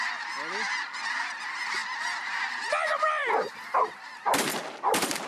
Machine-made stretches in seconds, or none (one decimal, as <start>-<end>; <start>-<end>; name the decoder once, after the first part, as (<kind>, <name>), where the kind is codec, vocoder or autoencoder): 1.8-4.5 (vocoder, BigVGAN v2)